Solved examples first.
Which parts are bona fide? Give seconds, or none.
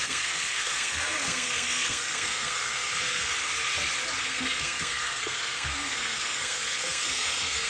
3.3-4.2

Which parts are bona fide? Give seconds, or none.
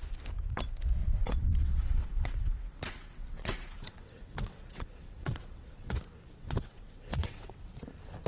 0.0-1.0; 6.0-6.4; 7.8-8.3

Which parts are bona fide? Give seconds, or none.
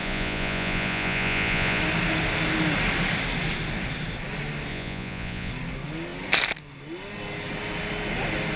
1.8-4.7; 5.5-8.6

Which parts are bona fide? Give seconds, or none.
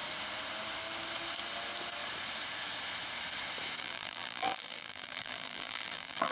0.0-3.8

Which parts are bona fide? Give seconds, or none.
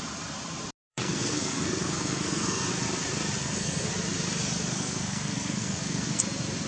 0.0-0.9; 2.7-3.4; 3.9-4.7; 6.2-6.7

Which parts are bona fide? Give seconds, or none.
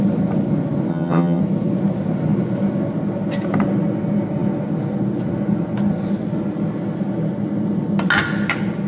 0.0-0.9; 1.4-8.9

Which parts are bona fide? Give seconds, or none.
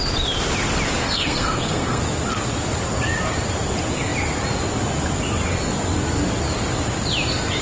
0.0-1.0; 2.0-7.6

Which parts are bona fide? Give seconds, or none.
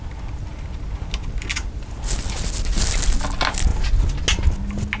0.0-5.0